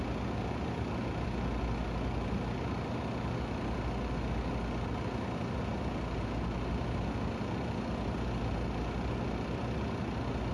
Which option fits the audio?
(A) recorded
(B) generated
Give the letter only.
A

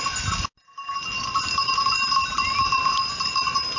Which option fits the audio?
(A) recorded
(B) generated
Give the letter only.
A